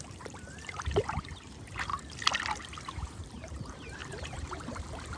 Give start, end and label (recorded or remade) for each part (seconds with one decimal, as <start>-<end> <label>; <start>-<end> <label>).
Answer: 0.0-1.9 remade; 1.9-2.9 recorded; 2.9-5.2 remade